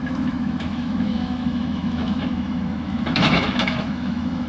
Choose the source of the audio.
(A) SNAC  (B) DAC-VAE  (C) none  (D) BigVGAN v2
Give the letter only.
B